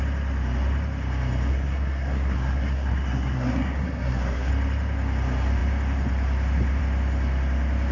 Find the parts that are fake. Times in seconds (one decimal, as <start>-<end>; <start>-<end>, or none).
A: 1.5-4.5